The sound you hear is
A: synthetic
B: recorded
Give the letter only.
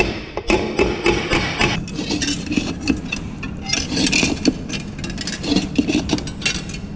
B